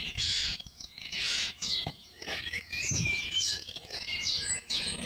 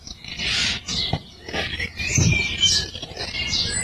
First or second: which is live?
second